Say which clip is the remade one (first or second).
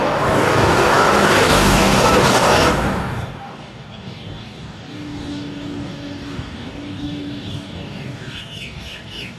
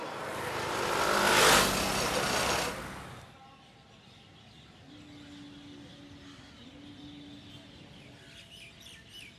first